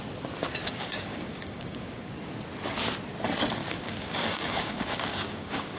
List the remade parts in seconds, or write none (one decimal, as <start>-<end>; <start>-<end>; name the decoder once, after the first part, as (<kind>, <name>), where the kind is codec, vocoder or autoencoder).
0.6-2.1 (codec, DAC); 3.6-5.8